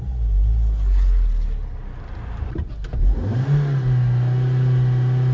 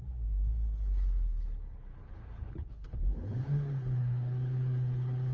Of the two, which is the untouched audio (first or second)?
first